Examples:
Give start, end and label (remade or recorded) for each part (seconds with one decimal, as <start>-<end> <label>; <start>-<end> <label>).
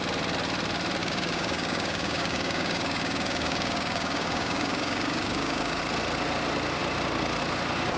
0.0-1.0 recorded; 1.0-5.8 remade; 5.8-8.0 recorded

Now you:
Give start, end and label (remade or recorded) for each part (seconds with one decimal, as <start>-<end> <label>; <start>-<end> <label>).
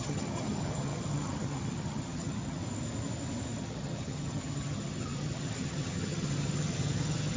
0.0-2.6 remade; 2.6-3.6 recorded; 3.6-7.4 remade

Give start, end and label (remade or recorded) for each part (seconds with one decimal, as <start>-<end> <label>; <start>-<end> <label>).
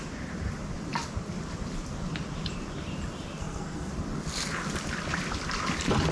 0.0-3.4 recorded; 3.4-3.9 remade; 3.9-6.1 recorded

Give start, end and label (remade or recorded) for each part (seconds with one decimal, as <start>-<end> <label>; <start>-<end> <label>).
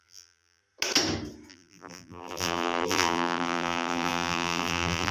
0.0-0.6 remade; 0.6-1.5 recorded; 1.5-5.1 remade